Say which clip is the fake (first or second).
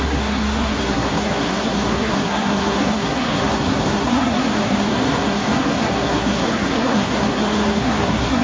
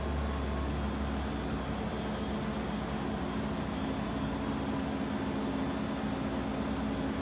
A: first